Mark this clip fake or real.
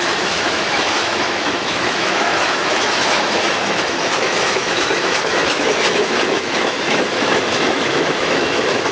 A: fake